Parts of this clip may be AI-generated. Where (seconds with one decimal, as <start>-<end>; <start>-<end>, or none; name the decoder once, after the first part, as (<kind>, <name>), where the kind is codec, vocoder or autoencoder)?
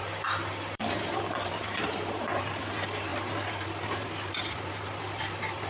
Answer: 0.0-5.7 (vocoder, BigVGAN v2)